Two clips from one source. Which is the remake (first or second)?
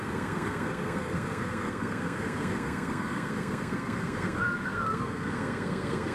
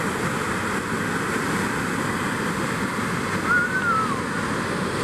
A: first